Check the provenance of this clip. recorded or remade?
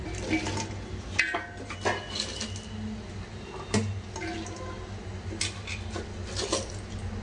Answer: recorded